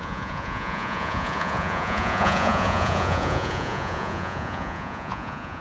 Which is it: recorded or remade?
remade